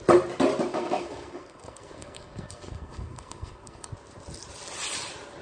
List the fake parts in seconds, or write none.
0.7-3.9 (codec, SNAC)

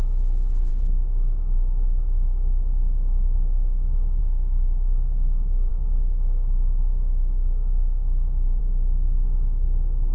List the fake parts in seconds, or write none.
0.0-10.1 (codec, SNAC)